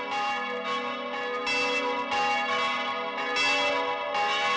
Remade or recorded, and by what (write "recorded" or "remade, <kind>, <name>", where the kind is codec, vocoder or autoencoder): recorded